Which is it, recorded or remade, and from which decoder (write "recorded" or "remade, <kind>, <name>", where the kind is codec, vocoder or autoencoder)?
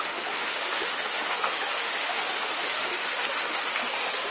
remade, autoencoder, DAC-VAE